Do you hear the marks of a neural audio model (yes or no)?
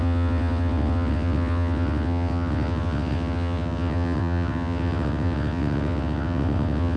yes